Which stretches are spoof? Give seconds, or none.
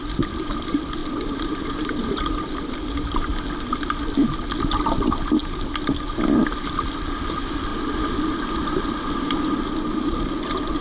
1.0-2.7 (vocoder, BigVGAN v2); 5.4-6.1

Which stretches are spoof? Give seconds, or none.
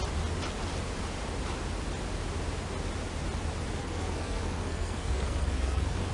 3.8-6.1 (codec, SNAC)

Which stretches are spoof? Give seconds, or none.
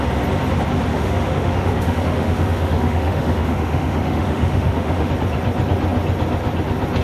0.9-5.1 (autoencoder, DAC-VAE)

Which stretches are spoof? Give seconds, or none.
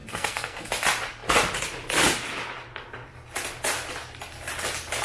0.0-0.7 (codec, SNAC)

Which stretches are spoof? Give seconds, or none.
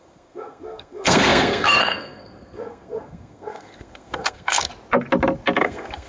0.0-4.7 (codec, SNAC); 5.6-6.1